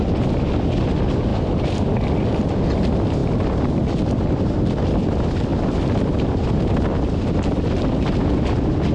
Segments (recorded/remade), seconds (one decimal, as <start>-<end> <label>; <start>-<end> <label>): 0.0-8.9 recorded